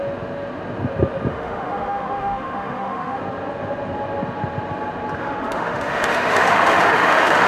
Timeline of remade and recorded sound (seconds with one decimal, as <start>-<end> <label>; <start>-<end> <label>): 0.0-1.3 recorded; 1.3-3.2 remade; 3.2-5.2 recorded; 5.2-7.5 remade